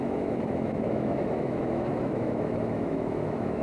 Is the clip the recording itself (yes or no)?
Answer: no